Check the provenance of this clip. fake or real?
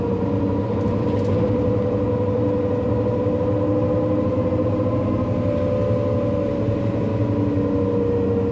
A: real